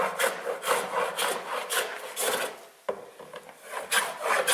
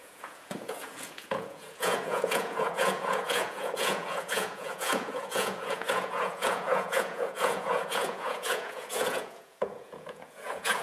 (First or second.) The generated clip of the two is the second